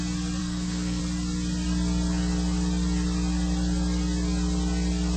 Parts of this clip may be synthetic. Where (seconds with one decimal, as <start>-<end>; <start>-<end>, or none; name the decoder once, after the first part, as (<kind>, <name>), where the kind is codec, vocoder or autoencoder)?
0.4-1.0 (codec, SNAC)

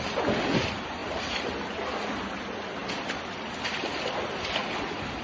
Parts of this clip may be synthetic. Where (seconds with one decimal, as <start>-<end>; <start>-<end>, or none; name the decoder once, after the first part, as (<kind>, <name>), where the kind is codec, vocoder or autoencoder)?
none

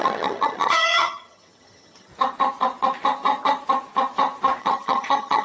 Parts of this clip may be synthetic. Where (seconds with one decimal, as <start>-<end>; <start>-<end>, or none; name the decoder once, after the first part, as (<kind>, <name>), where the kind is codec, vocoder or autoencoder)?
0.0-2.1 (vocoder, HiFi-GAN); 4.6-5.4

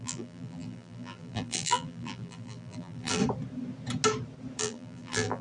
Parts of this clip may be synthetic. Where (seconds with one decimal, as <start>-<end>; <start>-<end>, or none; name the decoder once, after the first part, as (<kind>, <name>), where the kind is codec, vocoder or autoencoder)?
0.0-3.2 (vocoder, BigVGAN v2); 4.6-5.4

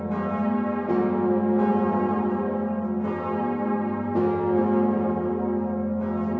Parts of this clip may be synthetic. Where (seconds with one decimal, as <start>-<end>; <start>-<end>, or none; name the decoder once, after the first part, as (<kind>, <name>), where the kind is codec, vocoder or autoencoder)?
none

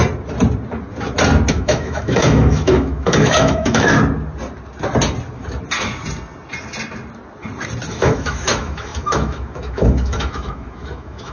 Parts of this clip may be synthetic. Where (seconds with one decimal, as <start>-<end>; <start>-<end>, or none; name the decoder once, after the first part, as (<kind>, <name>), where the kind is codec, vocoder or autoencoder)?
1.5-3.9 (autoencoder, DAC-VAE); 7.9-11.3

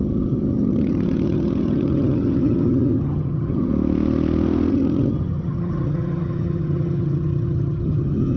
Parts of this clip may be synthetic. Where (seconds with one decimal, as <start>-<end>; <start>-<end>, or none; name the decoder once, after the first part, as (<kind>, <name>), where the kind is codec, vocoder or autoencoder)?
0.0-3.7 (vocoder, HiFi-GAN); 4.7-8.4